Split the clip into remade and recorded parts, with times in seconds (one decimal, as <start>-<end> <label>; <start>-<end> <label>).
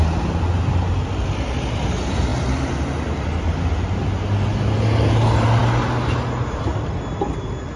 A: 0.0-7.8 recorded